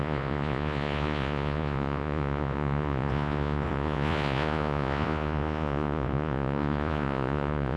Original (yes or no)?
no